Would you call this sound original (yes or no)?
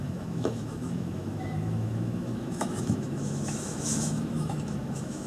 no